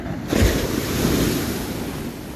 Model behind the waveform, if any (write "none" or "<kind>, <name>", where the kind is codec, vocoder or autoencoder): none